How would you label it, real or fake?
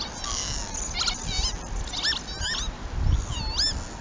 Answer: real